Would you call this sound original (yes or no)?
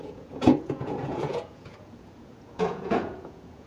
no